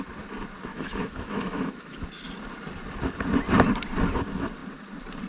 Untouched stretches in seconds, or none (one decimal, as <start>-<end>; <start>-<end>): 0.0-0.7; 2.1-5.3